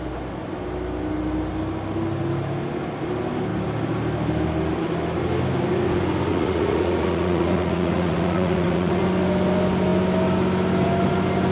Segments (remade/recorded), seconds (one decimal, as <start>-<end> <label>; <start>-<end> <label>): 0.0-6.3 recorded; 6.3-9.0 remade; 9.0-11.5 recorded